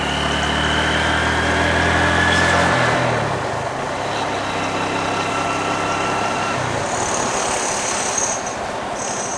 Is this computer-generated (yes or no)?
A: no